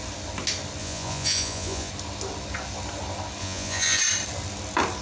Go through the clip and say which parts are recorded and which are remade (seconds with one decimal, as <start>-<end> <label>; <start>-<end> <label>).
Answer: 0.0-0.8 recorded; 0.8-1.9 remade; 1.9-3.4 recorded; 3.4-4.0 remade; 4.0-5.0 recorded